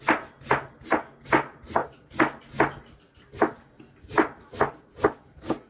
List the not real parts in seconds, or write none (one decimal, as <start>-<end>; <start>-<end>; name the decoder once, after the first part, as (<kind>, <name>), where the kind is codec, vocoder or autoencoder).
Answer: 1.8-2.4 (vocoder, BigVGAN v2)